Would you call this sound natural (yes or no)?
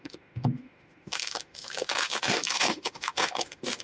no